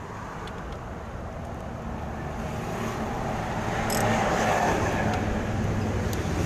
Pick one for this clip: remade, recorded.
recorded